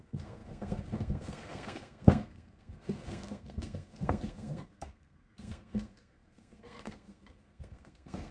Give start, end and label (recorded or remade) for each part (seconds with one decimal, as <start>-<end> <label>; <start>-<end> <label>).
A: 0.0-8.3 remade